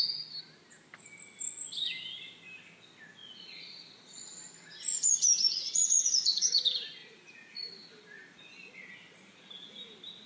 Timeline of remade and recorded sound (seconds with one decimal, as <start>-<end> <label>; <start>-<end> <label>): 0.0-3.2 recorded; 3.2-6.6 remade; 6.6-7.0 recorded; 7.0-7.7 remade; 7.7-10.3 recorded